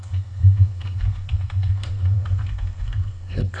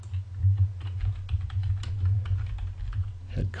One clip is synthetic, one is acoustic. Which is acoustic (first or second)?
second